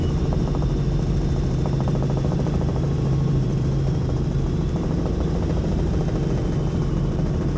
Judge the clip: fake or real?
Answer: fake